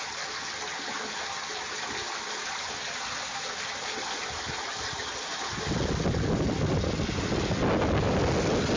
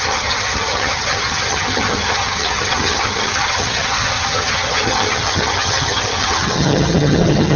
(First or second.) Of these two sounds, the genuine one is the first